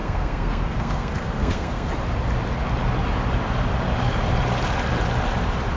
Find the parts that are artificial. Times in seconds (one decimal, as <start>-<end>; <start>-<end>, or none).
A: 0.0-1.9